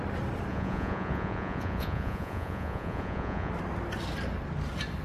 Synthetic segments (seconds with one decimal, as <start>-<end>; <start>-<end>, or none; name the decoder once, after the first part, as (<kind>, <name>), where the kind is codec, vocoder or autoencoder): 0.5-3.5 (vocoder, Vocos)